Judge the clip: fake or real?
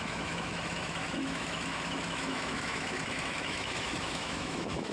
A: fake